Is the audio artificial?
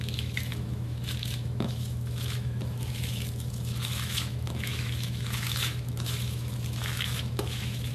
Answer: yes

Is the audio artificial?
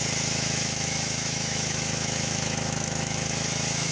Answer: yes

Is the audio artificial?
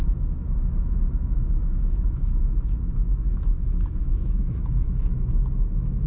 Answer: yes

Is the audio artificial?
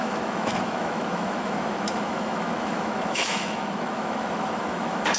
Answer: yes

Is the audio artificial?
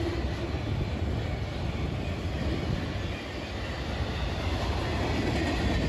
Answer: no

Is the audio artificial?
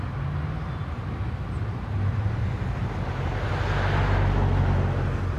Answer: no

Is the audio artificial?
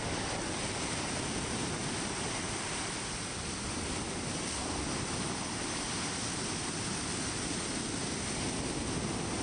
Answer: no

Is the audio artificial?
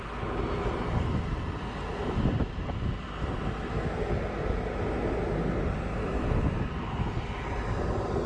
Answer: no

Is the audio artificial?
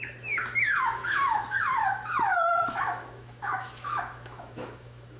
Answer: yes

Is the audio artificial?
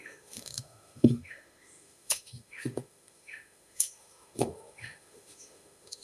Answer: yes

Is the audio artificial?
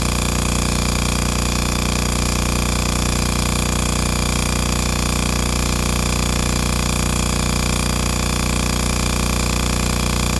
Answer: yes